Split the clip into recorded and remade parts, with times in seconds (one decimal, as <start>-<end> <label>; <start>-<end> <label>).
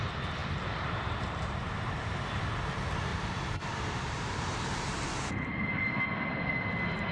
0.0-0.4 recorded; 0.4-2.4 remade; 2.4-3.1 recorded; 3.1-5.3 remade; 5.3-7.1 recorded